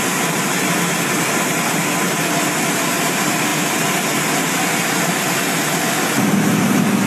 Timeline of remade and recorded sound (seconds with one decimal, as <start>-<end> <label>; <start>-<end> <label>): 0.0-7.1 recorded